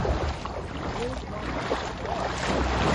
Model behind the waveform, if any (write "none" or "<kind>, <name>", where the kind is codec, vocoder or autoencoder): none